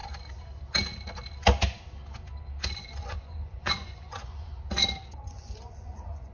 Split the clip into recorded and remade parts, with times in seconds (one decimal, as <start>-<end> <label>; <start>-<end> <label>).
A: 0.0-2.8 recorded; 2.8-4.5 remade; 4.5-5.2 recorded; 5.2-6.3 remade